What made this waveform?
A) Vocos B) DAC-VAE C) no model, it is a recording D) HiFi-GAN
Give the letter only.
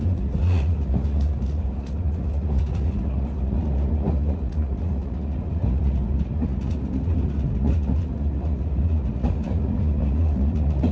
A